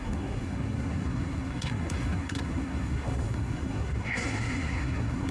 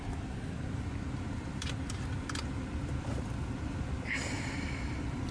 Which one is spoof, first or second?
first